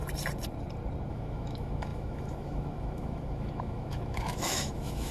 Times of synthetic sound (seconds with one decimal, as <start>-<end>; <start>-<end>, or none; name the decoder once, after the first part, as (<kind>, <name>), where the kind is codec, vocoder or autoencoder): 1.1-5.1 (autoencoder, DAC-VAE)

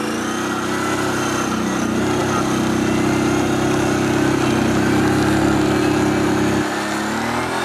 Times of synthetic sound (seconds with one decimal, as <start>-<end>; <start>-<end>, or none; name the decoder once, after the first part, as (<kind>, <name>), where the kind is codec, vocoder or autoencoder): none